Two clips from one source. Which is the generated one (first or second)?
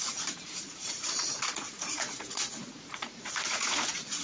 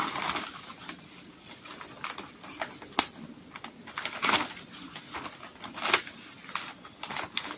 first